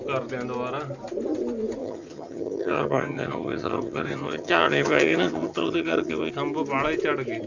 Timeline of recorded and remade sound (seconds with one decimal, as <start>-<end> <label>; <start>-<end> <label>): 0.0-1.8 recorded; 1.8-6.3 remade; 6.3-7.5 recorded